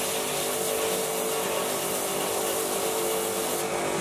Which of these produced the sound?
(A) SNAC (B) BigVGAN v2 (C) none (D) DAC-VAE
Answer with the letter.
C